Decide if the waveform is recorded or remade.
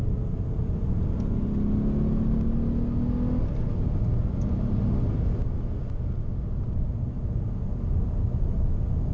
recorded